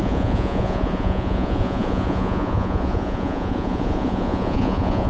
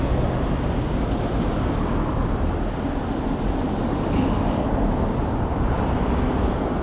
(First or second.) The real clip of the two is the second